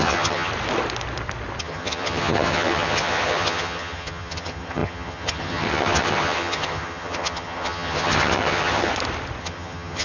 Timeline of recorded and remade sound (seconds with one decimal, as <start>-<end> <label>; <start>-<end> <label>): 0.0-0.5 remade; 0.5-1.6 recorded; 1.6-8.9 remade; 8.9-9.4 recorded; 9.4-10.0 remade